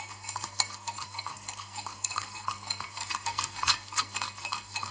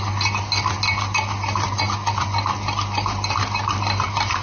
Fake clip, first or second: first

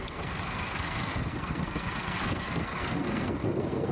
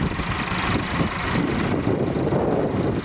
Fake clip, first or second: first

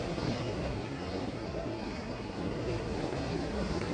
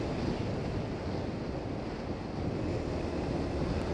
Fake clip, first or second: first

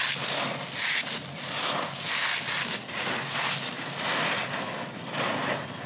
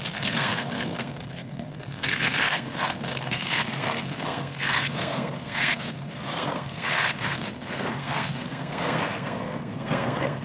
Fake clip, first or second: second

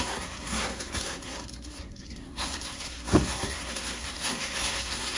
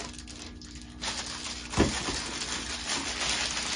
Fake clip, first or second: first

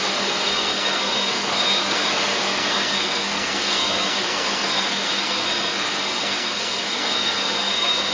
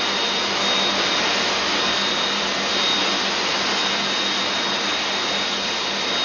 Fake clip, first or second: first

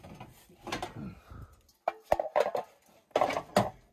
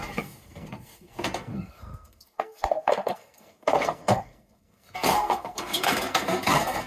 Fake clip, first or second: second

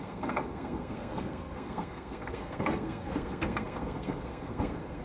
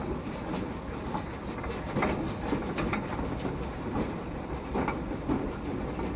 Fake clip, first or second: first